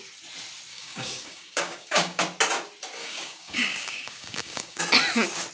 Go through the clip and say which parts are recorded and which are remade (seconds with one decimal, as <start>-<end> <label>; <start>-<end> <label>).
0.0-0.7 recorded; 0.7-2.2 remade; 2.2-3.0 recorded; 3.0-4.8 remade; 4.8-5.5 recorded

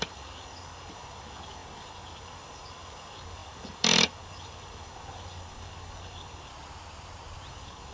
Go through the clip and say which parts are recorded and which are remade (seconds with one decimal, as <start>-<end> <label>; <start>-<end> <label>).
0.0-6.5 remade; 6.5-7.5 recorded; 7.5-7.9 remade

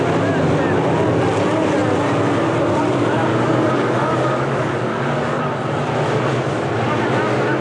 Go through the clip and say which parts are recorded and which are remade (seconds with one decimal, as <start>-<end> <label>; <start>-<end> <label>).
0.0-3.3 recorded; 3.3-5.4 remade; 5.4-7.6 recorded

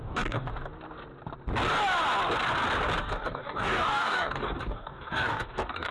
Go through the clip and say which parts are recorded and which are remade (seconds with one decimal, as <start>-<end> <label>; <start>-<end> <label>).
0.0-0.5 remade; 0.5-3.0 recorded; 3.0-5.9 remade

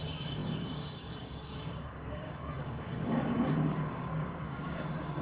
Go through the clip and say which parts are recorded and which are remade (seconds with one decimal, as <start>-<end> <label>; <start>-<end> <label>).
0.0-5.2 remade

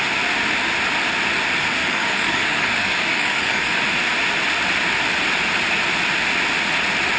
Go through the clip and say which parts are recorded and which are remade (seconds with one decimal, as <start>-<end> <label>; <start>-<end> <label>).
0.0-1.8 recorded; 1.8-3.8 remade; 3.8-7.2 recorded

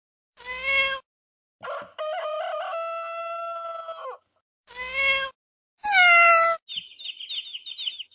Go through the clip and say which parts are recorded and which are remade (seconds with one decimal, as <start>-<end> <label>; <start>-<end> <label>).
0.0-8.1 recorded